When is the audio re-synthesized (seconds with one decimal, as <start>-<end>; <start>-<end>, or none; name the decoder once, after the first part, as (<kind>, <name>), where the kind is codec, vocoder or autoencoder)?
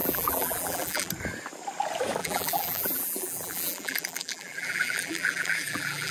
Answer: 0.0-1.1 (vocoder, BigVGAN v2); 2.2-6.1